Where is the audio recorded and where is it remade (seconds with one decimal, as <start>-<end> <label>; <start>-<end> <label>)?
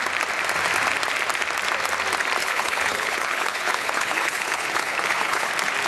0.0-2.4 recorded; 2.4-5.5 remade; 5.5-5.9 recorded